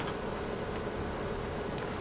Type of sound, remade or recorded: recorded